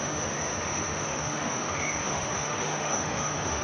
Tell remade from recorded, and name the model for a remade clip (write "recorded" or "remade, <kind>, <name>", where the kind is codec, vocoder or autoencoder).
remade, autoencoder, DAC-VAE